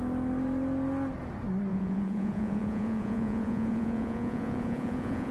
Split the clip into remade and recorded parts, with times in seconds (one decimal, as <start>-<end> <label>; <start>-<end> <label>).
0.0-1.7 recorded; 1.7-5.3 remade